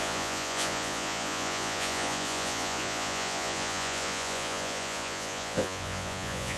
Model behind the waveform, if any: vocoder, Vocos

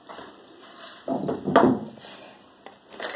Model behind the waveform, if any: none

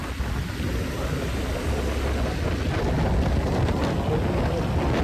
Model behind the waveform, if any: none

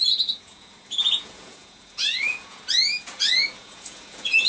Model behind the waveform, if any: vocoder, Vocos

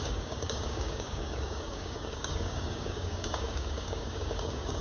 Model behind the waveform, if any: codec, DAC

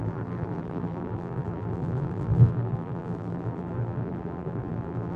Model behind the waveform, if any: vocoder, BigVGAN v2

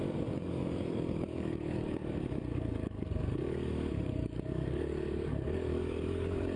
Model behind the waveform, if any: codec, DAC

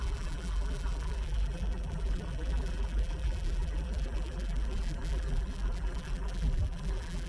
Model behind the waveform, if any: vocoder, BigVGAN v2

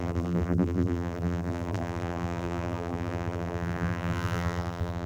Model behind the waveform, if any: vocoder, BigVGAN v2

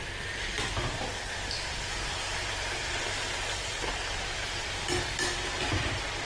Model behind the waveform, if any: vocoder, BigVGAN v2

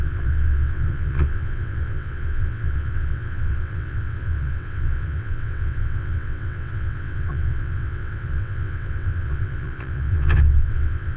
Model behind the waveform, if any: vocoder, WaveNeXt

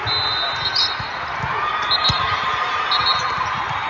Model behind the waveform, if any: none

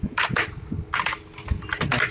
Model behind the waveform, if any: none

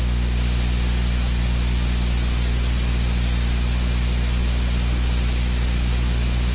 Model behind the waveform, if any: none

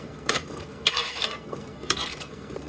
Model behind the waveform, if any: codec, SNAC